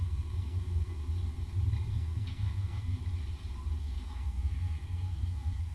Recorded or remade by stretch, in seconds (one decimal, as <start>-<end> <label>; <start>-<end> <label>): 0.0-1.0 remade; 1.0-1.9 recorded; 1.9-3.0 remade; 3.0-3.8 recorded; 3.8-5.7 remade